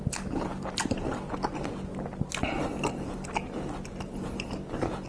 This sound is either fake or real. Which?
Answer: real